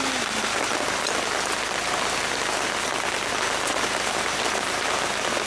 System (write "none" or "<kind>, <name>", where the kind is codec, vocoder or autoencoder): none